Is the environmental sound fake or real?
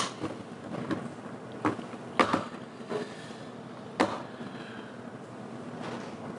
real